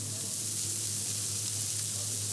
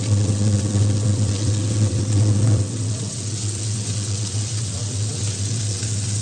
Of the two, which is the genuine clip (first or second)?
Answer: first